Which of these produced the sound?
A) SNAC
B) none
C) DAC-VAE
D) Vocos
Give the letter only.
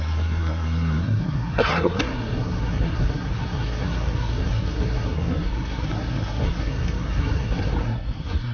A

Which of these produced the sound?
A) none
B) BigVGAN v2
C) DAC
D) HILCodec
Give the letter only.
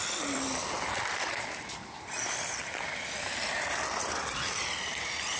B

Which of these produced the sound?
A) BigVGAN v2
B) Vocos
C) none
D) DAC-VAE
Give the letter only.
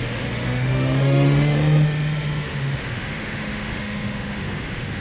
D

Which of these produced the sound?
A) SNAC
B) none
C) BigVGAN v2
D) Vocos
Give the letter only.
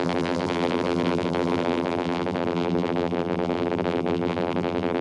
C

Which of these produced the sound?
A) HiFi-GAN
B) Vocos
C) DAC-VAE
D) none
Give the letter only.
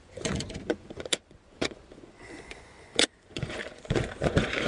B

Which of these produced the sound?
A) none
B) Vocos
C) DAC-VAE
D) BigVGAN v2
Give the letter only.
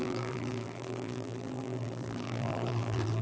D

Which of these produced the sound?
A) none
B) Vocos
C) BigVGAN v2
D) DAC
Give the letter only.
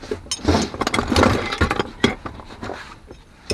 A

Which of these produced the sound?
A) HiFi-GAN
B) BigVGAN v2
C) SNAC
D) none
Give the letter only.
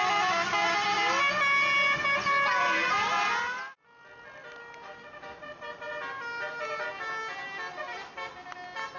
D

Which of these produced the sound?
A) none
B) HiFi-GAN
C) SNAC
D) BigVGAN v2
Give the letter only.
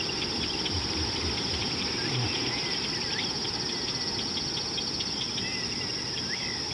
A